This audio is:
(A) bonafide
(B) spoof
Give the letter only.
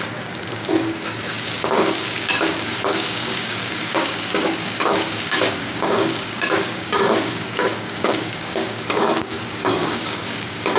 B